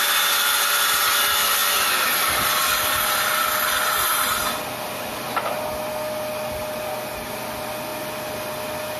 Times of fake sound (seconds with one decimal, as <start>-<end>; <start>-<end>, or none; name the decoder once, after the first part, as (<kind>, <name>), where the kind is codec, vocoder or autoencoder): none

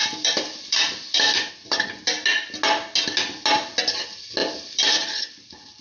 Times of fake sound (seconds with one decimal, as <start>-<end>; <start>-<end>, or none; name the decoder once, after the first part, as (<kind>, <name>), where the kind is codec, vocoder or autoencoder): 0.0-1.5 (vocoder, BigVGAN v2); 4.4-5.8

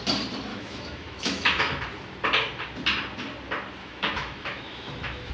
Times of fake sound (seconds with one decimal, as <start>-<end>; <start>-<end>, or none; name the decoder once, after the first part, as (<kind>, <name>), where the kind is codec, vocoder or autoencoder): 0.5-1.8 (autoencoder, DAC-VAE); 3.8-5.3

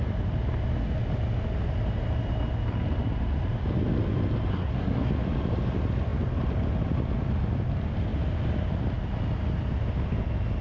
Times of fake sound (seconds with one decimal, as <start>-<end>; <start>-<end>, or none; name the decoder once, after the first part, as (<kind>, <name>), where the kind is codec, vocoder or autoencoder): 4.5-5.1 (codec, SNAC)

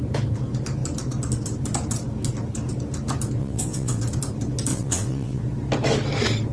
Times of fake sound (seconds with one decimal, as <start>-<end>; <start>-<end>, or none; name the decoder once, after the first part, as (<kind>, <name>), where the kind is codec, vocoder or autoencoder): 3.4-4.0 (vocoder, WaveNeXt); 4.7-5.4

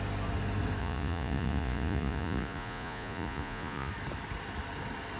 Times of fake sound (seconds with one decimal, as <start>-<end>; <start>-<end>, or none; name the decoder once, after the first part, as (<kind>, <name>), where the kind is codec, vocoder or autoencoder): 0.8-3.9 (vocoder, Vocos)

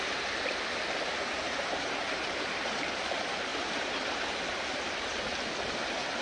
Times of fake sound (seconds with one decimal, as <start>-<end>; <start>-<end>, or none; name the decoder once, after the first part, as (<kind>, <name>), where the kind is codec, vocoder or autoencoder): 0.0-5.3 (vocoder, BigVGAN v2)

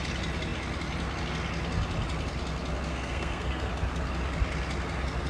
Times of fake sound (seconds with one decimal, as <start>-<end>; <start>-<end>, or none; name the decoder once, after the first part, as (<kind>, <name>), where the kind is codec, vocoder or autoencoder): 2.9-3.7 (codec, SNAC)